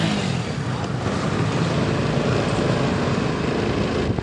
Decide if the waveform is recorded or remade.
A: recorded